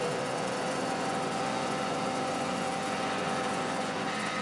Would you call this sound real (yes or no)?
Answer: no